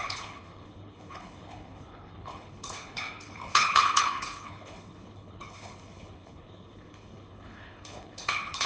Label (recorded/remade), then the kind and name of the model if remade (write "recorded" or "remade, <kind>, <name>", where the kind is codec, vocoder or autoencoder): remade, codec, HILCodec